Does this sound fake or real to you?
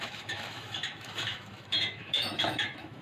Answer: fake